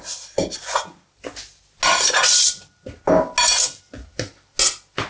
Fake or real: real